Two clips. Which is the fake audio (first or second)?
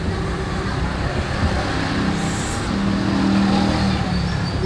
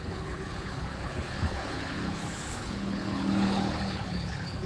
second